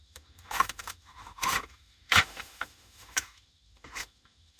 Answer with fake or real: fake